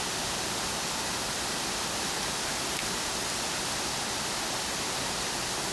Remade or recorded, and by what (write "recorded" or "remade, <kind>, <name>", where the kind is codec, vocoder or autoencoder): recorded